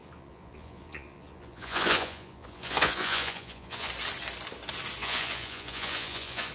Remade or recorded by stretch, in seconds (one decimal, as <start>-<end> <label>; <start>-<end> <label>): 0.0-3.9 remade; 3.9-5.0 recorded; 5.0-6.5 remade